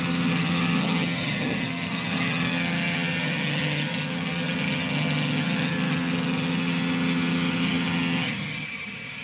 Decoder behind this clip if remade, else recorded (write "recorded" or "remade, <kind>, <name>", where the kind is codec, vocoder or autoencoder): remade, vocoder, HiFi-GAN